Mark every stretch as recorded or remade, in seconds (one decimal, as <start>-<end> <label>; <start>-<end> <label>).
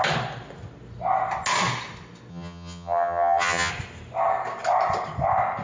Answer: 0.0-2.3 recorded; 2.3-3.7 remade; 3.7-5.6 recorded